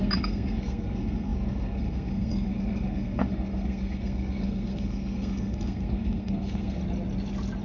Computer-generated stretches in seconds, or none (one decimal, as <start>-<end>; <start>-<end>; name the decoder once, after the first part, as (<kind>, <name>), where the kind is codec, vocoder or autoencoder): 0.0-6.8 (codec, SNAC)